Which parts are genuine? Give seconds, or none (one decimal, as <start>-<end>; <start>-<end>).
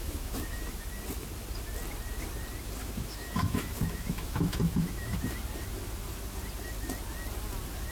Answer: 0.6-2.8; 5.2-7.9